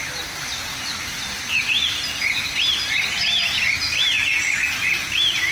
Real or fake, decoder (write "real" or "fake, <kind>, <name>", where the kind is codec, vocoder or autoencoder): real